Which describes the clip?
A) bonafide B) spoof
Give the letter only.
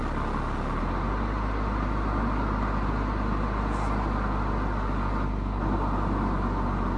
A